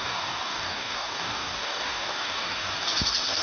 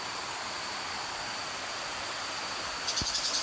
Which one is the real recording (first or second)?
second